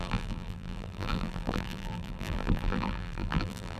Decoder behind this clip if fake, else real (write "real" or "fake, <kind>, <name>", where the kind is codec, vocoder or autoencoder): fake, vocoder, BigVGAN v2